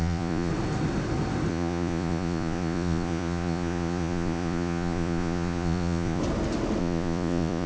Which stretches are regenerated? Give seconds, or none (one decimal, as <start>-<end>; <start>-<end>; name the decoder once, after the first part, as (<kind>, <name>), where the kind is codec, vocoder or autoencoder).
0.0-0.5 (vocoder, Vocos); 1.5-6.2; 6.8-7.7